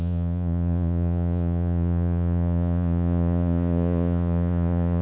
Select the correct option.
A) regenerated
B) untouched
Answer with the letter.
A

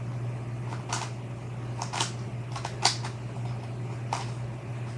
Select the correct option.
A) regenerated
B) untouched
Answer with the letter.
B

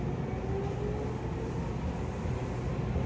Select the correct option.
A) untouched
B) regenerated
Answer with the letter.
A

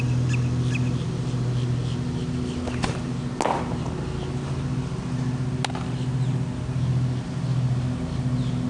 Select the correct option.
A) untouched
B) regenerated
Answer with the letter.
A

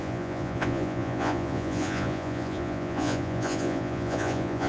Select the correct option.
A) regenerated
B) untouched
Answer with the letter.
A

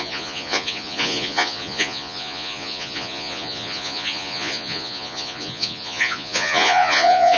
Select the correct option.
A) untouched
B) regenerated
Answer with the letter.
B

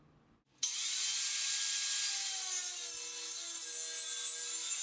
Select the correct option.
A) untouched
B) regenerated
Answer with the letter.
A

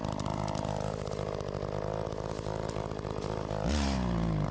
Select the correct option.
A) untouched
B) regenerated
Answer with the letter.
A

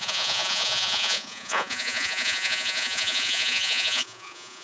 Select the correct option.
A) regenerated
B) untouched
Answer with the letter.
A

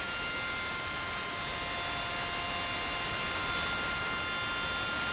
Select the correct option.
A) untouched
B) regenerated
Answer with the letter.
A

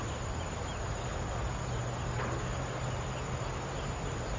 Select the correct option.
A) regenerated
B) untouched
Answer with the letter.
B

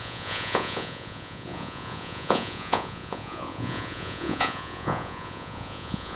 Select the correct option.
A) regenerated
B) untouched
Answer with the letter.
A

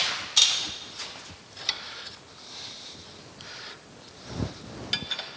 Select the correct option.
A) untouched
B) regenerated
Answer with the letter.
A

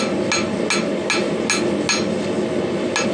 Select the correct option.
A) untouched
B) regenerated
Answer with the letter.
A